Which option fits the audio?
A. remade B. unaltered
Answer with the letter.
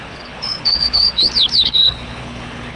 A